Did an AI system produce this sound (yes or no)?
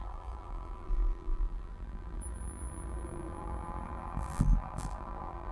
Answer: yes